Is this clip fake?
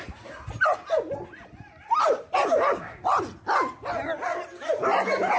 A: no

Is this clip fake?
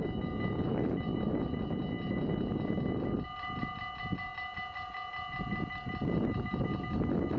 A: no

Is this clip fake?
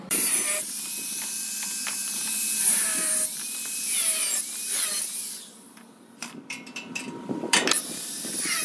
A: yes